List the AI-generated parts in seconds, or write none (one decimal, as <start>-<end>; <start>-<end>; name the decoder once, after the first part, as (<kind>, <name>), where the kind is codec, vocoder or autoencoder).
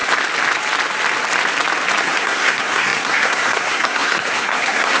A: 2.0-5.0 (codec, SNAC)